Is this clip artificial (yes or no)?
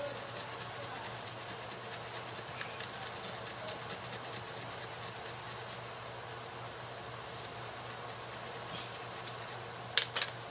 no